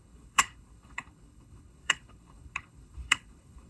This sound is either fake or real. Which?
fake